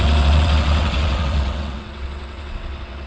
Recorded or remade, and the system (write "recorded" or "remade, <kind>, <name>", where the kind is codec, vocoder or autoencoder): remade, vocoder, WaveNeXt